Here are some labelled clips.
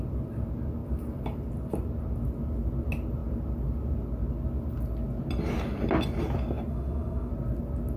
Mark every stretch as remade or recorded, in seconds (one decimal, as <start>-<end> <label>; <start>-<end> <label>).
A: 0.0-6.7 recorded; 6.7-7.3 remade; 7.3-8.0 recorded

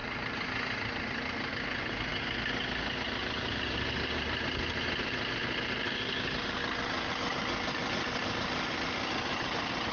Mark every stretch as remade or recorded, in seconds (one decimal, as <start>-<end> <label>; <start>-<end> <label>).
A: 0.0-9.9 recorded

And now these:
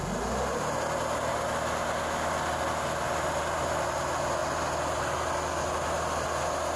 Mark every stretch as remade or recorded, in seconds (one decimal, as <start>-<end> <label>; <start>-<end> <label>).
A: 0.0-6.8 recorded

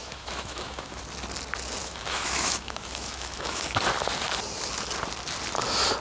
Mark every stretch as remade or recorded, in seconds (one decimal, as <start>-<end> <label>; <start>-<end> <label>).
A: 0.0-1.0 remade; 1.0-1.8 recorded; 1.8-3.6 remade; 3.6-6.0 recorded

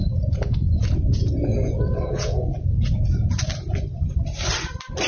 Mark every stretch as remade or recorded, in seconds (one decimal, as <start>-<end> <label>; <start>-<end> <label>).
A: 0.0-3.1 remade; 3.1-5.1 recorded

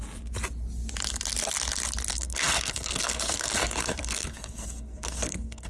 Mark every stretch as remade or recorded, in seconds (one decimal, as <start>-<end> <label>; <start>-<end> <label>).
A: 0.0-2.1 recorded; 2.1-5.7 remade

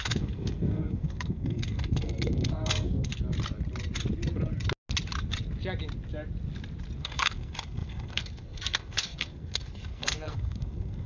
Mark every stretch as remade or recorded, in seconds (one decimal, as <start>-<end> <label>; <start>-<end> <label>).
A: 0.0-3.1 remade; 3.1-7.0 recorded; 7.0-11.1 remade